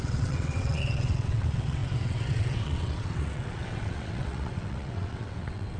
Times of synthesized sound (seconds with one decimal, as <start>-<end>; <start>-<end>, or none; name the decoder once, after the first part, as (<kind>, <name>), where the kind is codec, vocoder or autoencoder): 0.0-5.8 (vocoder, WaveNeXt)